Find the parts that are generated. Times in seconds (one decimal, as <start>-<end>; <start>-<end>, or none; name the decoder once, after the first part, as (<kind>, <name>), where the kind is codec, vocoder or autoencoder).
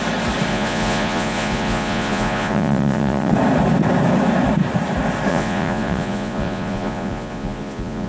0.5-3.3 (vocoder, Vocos); 5.3-8.1